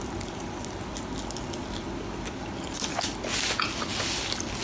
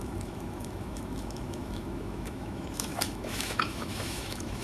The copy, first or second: second